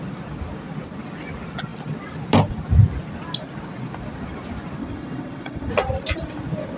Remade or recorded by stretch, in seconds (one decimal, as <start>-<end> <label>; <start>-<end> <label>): 0.0-4.8 recorded; 4.8-5.7 remade; 5.7-6.8 recorded